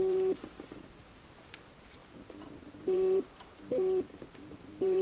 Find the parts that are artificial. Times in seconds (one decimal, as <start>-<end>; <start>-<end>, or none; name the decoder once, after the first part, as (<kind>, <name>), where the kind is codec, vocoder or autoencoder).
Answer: 0.0-5.0 (vocoder, BigVGAN v2)